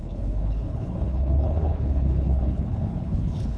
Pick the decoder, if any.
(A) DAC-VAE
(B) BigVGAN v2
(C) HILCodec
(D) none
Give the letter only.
C